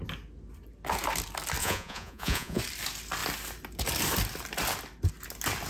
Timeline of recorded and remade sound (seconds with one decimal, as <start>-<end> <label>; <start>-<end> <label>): 0.0-1.6 recorded; 1.6-2.6 remade; 2.6-5.7 recorded